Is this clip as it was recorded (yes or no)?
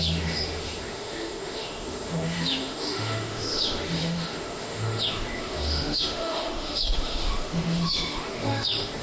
no